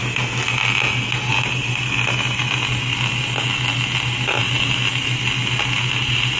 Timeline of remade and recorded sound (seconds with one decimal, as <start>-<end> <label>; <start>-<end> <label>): 0.0-6.4 recorded